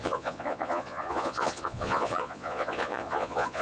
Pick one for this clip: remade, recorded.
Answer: remade